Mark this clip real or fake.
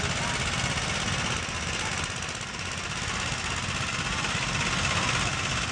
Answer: real